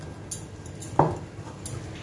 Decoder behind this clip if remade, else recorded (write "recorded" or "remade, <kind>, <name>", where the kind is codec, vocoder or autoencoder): recorded